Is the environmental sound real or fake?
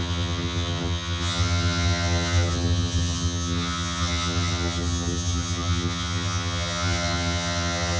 fake